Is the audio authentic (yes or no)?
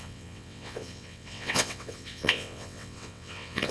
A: no